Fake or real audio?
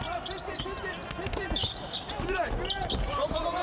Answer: real